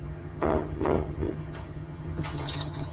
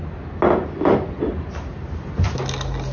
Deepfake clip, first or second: first